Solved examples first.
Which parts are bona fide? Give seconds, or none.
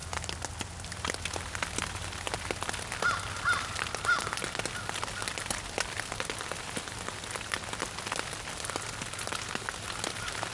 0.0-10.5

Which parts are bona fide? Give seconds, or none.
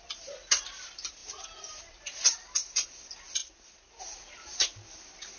0.0-5.4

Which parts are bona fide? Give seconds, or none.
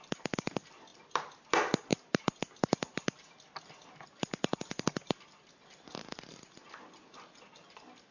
0.0-8.1